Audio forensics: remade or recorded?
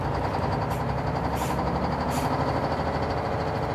recorded